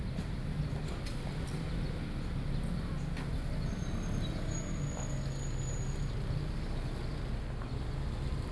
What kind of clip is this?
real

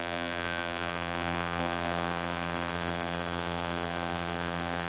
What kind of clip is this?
fake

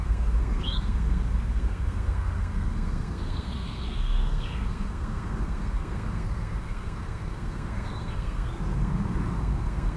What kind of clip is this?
fake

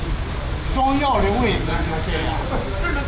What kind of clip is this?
real